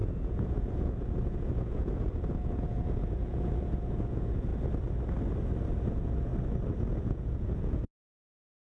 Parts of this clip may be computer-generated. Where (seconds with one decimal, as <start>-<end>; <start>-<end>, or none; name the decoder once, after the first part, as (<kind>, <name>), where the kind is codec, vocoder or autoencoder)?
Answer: 0.0-4.5 (vocoder, Vocos); 5.7-6.3; 6.9-8.7